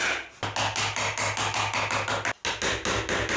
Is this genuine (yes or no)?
yes